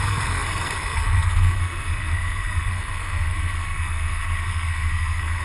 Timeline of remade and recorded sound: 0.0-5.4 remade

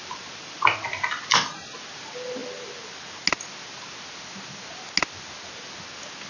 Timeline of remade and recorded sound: 0.0-6.3 recorded

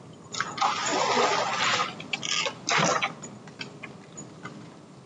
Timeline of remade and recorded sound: 0.0-5.1 recorded

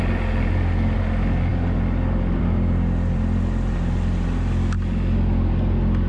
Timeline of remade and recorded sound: 0.0-6.1 recorded

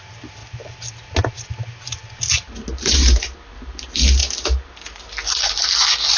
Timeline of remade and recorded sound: 0.0-6.2 recorded

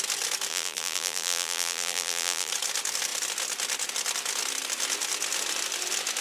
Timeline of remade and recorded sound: 0.0-0.5 recorded; 0.5-2.5 remade; 2.5-6.2 recorded

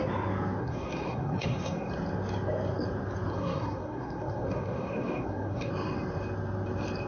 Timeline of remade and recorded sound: 0.0-0.6 recorded; 0.6-1.9 remade; 1.9-3.3 recorded; 3.3-5.7 remade; 5.7-7.1 recorded

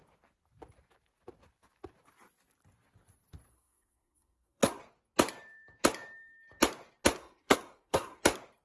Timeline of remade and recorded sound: 0.0-3.5 recorded; 3.5-4.8 remade; 4.8-7.2 recorded; 7.2-8.2 remade; 8.2-8.6 recorded